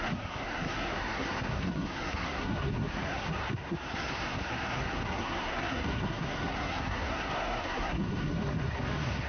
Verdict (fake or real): fake